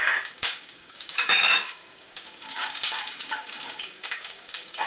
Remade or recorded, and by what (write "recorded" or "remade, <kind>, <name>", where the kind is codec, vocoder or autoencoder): remade, codec, DAC